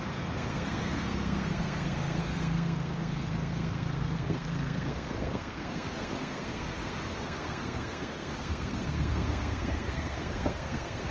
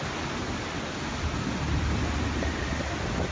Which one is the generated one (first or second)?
first